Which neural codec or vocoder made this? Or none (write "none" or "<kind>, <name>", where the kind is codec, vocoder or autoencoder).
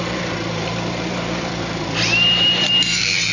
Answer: vocoder, BigVGAN v2